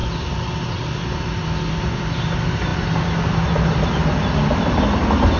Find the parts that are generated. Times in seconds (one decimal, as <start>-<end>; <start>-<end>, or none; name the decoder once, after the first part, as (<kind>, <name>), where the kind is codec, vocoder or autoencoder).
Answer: none